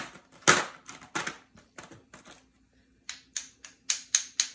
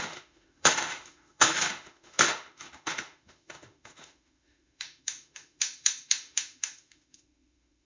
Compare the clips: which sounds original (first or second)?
first